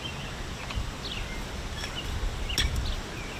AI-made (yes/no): no